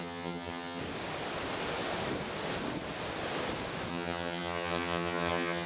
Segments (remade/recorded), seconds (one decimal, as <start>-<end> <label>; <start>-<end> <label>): 0.0-0.8 remade; 0.8-3.9 recorded; 3.9-5.7 remade